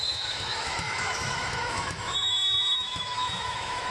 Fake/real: fake